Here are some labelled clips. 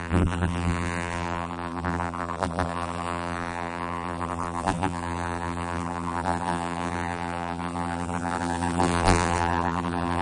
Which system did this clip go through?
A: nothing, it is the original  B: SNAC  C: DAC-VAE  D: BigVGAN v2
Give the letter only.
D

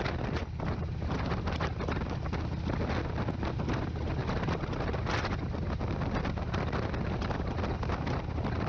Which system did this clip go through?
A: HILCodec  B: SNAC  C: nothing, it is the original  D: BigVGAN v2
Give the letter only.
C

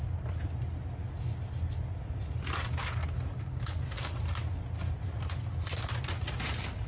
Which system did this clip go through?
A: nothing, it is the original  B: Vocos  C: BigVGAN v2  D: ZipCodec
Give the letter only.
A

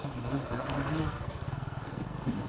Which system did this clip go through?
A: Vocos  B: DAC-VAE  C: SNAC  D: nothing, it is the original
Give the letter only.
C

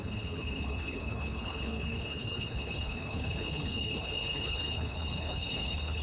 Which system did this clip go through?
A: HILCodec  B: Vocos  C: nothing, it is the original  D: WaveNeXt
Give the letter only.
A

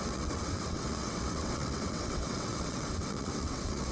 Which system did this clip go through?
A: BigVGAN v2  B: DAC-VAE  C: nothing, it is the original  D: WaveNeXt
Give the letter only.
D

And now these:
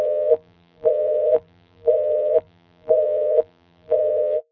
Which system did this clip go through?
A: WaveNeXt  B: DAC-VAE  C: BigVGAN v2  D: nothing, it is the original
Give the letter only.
C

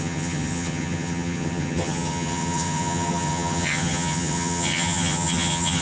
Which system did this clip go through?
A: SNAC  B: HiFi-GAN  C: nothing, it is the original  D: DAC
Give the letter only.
B